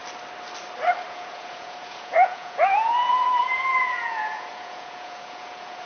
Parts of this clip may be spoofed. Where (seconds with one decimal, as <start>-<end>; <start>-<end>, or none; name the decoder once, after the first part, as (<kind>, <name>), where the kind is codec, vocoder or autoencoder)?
1.1-5.8 (vocoder, Vocos)